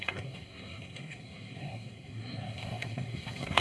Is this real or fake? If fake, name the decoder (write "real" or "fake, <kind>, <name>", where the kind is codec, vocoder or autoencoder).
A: fake, codec, SNAC